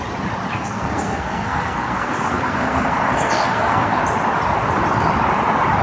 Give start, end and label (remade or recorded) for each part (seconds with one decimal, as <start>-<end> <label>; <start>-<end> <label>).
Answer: 0.0-0.5 recorded; 0.5-4.0 remade; 4.0-5.8 recorded